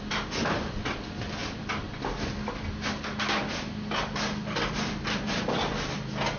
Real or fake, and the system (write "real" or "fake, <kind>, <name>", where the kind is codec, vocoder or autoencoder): real